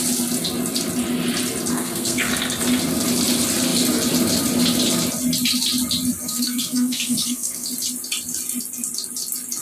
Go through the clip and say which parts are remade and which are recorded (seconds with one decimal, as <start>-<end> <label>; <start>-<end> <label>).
0.0-1.7 recorded; 1.7-2.3 remade; 2.3-6.2 recorded; 6.2-7.7 remade; 7.7-9.6 recorded